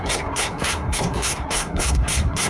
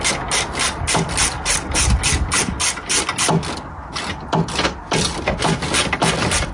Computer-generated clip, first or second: first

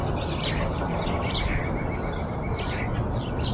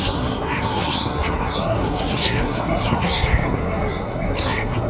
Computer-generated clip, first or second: second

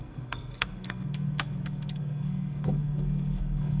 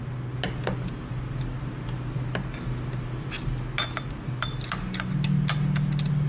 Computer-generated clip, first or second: first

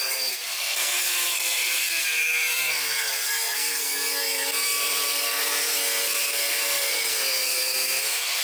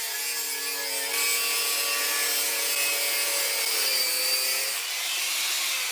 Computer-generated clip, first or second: first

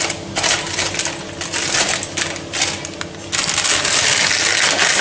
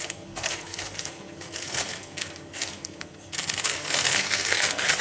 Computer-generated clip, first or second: second